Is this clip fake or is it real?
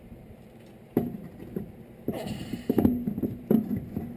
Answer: fake